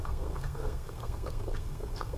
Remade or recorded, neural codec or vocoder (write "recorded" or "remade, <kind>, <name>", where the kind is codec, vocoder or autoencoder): remade, codec, SNAC